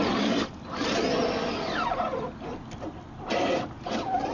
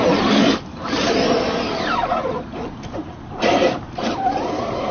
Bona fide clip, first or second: first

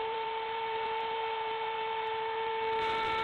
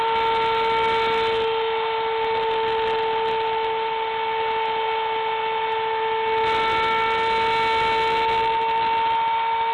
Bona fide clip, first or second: second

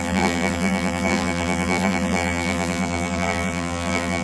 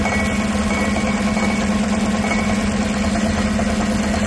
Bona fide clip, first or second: second